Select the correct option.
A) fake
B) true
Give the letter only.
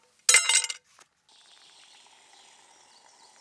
B